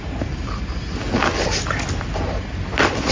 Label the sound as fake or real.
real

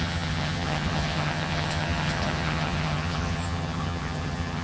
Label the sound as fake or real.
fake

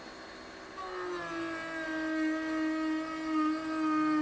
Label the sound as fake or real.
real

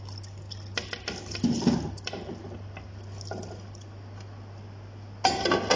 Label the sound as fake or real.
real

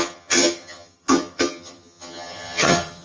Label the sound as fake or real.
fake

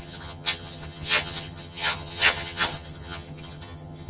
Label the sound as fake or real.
fake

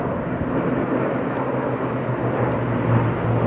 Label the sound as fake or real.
real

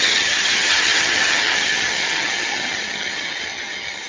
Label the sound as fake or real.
fake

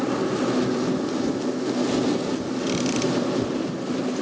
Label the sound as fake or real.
real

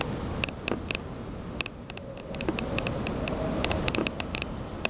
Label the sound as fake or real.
real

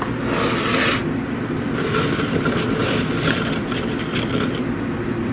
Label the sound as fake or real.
real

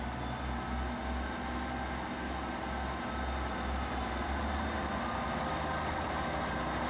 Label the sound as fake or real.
real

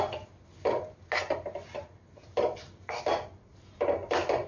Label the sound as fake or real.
real